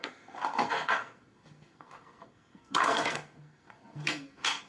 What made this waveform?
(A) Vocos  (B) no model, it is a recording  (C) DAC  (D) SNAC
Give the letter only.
D